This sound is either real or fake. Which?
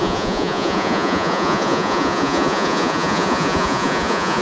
fake